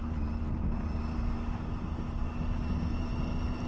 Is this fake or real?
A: real